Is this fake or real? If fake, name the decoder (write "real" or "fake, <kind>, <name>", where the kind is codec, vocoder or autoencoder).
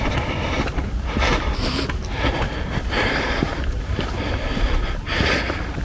real